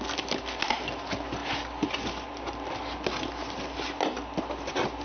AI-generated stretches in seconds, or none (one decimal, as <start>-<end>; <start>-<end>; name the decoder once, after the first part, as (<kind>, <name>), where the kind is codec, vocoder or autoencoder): none